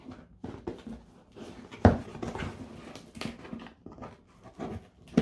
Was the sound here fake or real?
real